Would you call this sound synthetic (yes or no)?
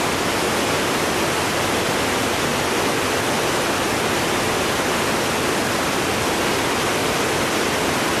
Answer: no